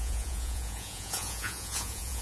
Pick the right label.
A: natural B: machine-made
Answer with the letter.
B